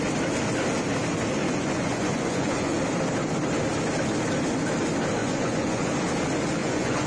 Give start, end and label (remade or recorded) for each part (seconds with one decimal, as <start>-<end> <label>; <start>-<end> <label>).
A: 0.0-1.4 recorded; 1.4-2.8 remade; 2.8-5.2 recorded; 5.2-5.9 remade; 5.9-6.6 recorded; 6.6-7.1 remade